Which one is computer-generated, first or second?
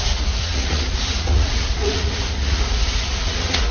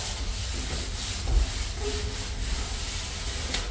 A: first